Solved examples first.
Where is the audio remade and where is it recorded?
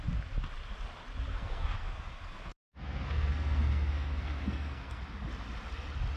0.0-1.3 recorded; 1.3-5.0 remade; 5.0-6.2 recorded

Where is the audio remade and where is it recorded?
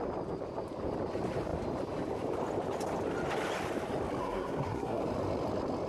0.0-4.2 recorded; 4.2-5.0 remade; 5.0-5.9 recorded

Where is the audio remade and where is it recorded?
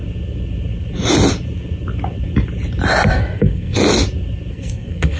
0.0-3.1 recorded; 3.1-3.8 remade; 3.8-4.5 recorded; 4.5-5.2 remade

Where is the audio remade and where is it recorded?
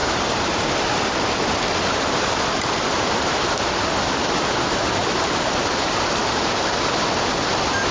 0.0-7.9 recorded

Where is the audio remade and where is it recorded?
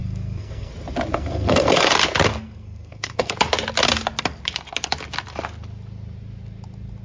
0.0-0.7 remade; 0.7-1.1 recorded; 1.1-1.9 remade; 1.9-2.3 recorded; 2.3-3.3 remade; 3.3-7.0 recorded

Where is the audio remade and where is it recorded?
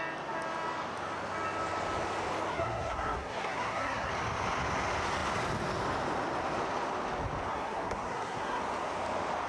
0.0-2.5 recorded; 2.5-4.1 remade; 4.1-7.5 recorded; 7.5-8.6 remade; 8.6-9.5 recorded